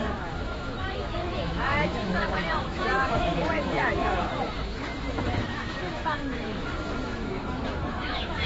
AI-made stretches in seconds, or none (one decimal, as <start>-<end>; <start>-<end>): 0.0-8.5